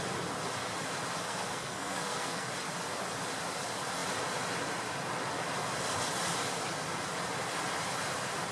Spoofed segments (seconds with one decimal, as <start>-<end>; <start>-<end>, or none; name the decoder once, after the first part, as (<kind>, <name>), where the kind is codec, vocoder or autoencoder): 1.2-2.5 (codec, SNAC)